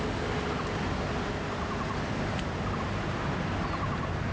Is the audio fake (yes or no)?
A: no